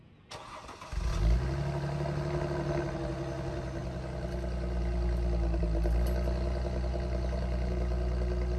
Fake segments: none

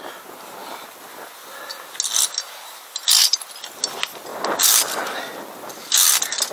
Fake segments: none

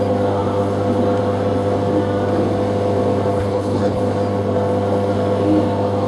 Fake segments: 3.4-4.0 (codec, HILCodec)